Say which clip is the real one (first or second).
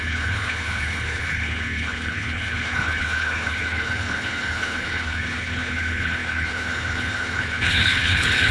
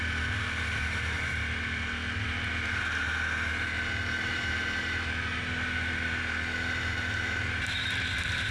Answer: second